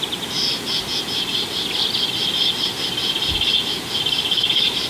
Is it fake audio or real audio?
real